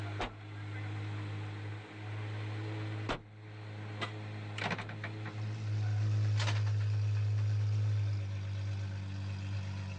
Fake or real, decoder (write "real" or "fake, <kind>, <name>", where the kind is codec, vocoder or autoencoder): real